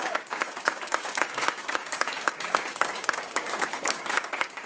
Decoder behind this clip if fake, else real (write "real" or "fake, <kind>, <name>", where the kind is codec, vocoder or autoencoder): fake, codec, DAC